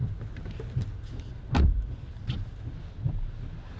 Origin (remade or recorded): recorded